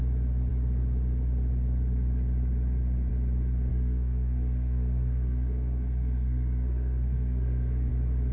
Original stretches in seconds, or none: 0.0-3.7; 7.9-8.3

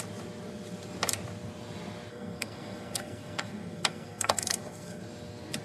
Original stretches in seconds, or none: 0.0-2.1; 5.0-5.6